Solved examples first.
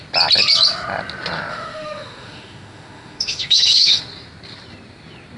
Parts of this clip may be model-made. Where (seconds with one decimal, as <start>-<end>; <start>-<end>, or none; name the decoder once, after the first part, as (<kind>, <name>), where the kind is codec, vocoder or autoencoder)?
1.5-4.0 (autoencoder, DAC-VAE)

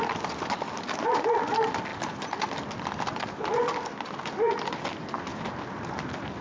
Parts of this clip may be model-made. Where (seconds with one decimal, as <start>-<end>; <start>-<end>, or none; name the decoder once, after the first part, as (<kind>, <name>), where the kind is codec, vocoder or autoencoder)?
none

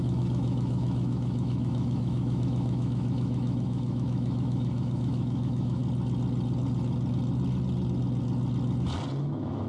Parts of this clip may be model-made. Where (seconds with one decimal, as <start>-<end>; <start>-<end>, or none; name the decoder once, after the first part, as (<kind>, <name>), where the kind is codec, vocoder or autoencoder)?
0.0-5.8 (autoencoder, DAC-VAE); 9.2-9.7

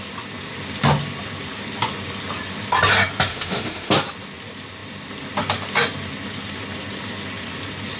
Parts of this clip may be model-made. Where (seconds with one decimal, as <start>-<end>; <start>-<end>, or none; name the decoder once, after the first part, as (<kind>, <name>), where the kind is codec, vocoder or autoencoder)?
3.3-3.9 (autoencoder, DAC-VAE)

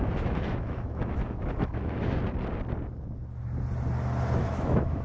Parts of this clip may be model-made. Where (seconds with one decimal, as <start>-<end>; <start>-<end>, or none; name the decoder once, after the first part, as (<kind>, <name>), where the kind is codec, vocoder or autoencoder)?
0.0-2.2 (autoencoder, DAC-VAE); 4.4-5.0

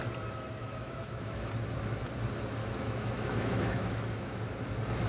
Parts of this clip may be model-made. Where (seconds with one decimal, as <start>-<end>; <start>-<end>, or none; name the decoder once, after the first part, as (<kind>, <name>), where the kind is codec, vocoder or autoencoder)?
0.6-1.5 (autoencoder, DAC-VAE); 2.6-4.4